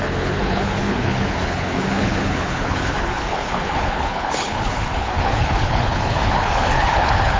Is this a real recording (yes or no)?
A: no